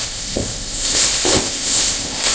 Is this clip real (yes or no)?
no